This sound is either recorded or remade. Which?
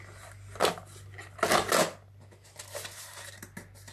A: recorded